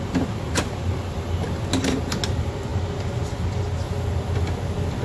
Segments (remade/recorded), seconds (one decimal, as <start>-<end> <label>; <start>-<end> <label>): 0.0-5.0 recorded